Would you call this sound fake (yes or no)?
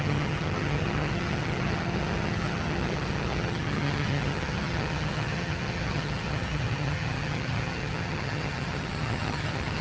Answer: yes